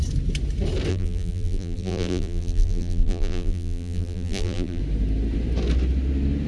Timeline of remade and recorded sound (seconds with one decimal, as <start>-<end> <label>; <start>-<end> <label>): 0.0-0.9 recorded; 0.9-4.8 remade; 4.8-6.5 recorded